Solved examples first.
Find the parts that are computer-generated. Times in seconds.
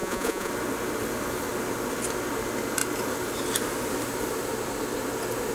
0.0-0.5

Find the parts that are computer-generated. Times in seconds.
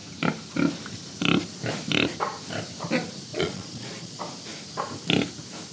3.3-4.2